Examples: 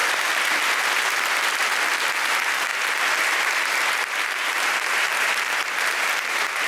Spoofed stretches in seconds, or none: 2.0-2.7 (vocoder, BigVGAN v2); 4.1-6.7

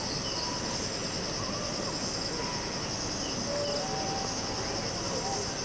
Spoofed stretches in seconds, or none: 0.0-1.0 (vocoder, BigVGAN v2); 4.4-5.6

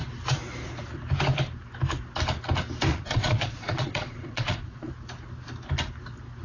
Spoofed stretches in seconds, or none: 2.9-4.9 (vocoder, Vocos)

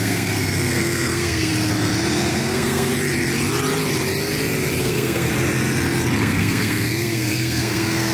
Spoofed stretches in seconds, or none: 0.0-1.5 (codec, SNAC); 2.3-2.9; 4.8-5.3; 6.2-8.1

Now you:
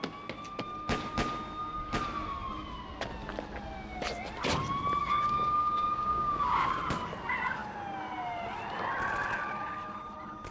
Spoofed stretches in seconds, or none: 5.0-6.6 (codec, DAC)

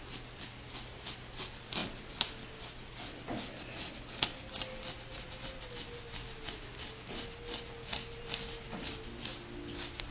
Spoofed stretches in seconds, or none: none

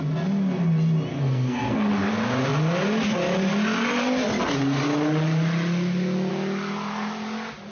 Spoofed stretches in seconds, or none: 1.1-1.9 (codec, SNAC)

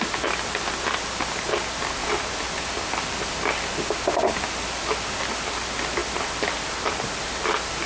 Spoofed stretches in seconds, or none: 2.0-2.6 (vocoder, BigVGAN v2); 6.0-7.0